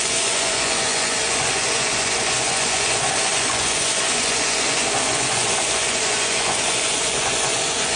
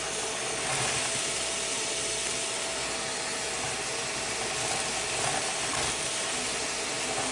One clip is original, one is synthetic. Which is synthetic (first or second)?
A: first